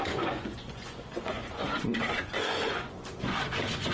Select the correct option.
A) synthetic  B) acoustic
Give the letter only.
A